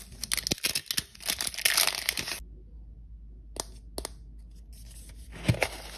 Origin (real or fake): real